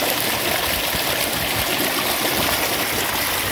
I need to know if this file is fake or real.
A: real